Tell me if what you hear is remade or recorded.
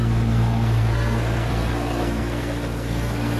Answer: remade